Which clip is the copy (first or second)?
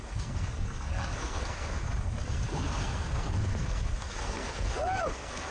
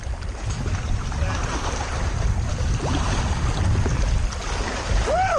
first